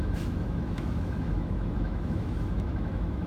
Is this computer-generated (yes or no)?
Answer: yes